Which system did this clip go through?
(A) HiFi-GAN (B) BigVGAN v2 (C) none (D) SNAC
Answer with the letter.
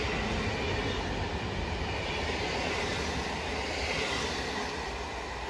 C